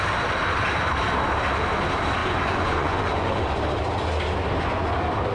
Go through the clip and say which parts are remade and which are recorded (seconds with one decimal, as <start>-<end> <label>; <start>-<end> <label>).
0.0-2.2 recorded; 2.2-3.4 remade; 3.4-5.3 recorded

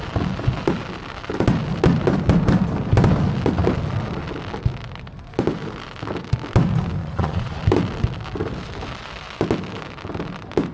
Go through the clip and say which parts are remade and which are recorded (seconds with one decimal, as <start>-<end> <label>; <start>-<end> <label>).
0.0-7.0 recorded; 7.0-7.6 remade; 7.6-10.7 recorded

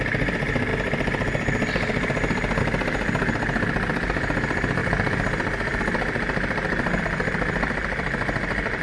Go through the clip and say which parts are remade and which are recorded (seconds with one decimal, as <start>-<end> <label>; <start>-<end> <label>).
0.0-8.8 recorded

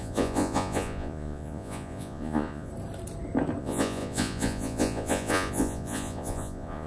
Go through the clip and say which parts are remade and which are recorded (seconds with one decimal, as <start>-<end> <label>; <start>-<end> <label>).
0.0-2.7 remade; 2.7-3.6 recorded; 3.6-6.9 remade

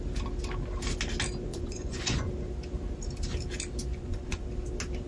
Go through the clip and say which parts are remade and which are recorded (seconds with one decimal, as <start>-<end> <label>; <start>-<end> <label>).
0.0-1.5 recorded; 1.5-2.3 remade; 2.3-3.9 recorded; 3.9-4.4 remade; 4.4-5.1 recorded

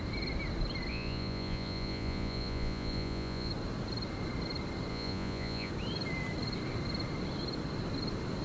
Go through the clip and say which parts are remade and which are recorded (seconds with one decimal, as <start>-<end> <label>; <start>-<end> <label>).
0.0-0.9 recorded; 0.9-3.5 remade; 3.5-4.9 recorded; 4.9-5.7 remade; 5.7-8.4 recorded